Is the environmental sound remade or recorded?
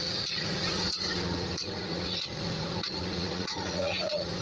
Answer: remade